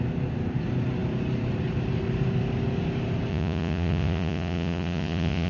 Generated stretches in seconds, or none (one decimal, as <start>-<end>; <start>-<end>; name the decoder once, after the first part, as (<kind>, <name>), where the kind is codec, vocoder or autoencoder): 3.3-5.5 (vocoder, Vocos)